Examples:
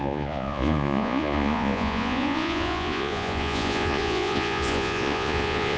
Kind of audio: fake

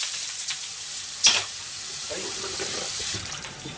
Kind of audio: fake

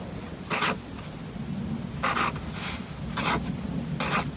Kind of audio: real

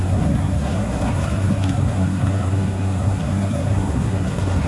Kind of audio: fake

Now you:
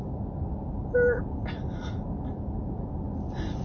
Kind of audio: real